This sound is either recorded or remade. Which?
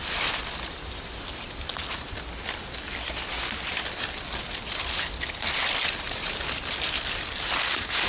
recorded